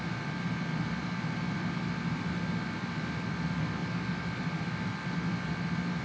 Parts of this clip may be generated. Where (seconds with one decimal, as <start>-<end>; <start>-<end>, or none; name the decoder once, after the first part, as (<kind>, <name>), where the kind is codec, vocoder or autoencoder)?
none